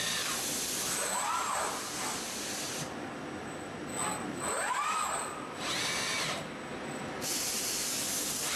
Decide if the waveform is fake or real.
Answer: real